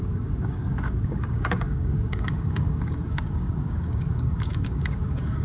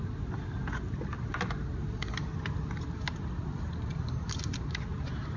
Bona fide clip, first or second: second